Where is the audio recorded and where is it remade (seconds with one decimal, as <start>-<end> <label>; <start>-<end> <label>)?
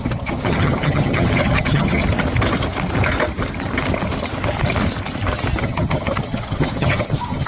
0.0-2.0 remade; 2.0-5.6 recorded; 5.6-7.5 remade